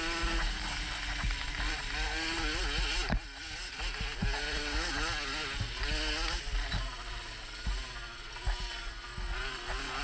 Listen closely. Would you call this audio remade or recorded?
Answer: recorded